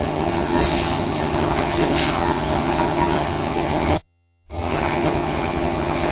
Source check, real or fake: fake